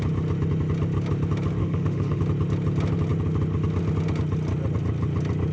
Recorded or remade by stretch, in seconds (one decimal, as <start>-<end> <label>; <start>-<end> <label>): 0.0-1.6 recorded; 1.6-2.2 remade; 2.2-5.5 recorded